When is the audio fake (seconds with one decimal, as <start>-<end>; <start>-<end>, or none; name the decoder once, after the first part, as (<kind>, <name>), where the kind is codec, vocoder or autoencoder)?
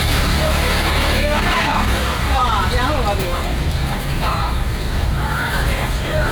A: 0.0-2.4 (codec, DAC); 3.2-6.3